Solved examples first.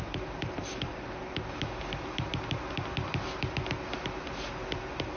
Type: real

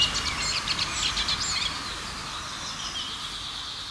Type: real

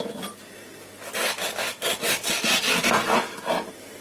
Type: real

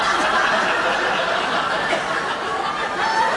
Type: real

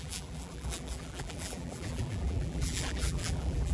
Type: fake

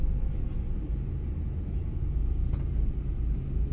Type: real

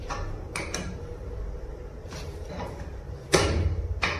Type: fake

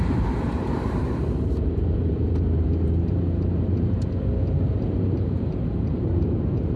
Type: fake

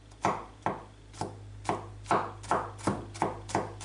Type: real